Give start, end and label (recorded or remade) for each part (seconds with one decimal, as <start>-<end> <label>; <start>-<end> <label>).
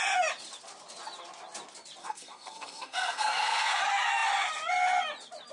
0.0-2.0 recorded; 2.0-3.8 remade; 3.8-5.5 recorded